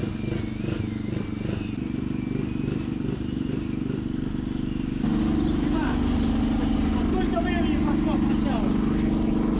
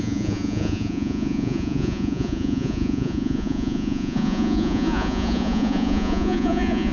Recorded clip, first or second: first